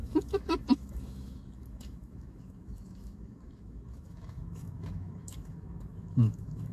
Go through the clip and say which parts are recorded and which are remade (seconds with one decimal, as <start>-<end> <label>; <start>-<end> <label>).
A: 0.0-6.7 remade